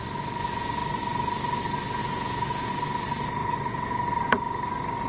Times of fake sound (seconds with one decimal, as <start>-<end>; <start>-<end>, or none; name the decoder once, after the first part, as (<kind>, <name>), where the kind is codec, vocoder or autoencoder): 2.0-2.7 (vocoder, Vocos); 3.4-4.1